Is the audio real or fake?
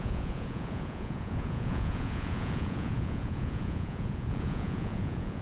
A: fake